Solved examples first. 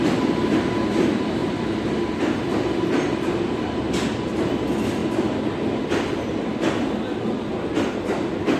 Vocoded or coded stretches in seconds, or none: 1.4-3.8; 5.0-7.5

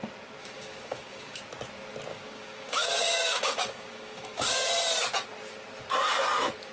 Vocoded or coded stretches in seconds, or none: 0.4-1.4; 2.1-4.7

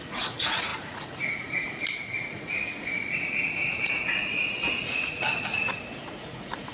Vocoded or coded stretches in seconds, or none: 0.0-6.7

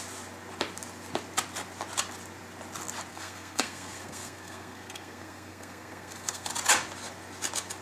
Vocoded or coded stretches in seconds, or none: 3.1-6.5

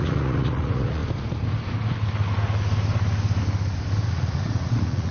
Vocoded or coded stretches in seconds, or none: 0.0-1.0; 4.1-5.1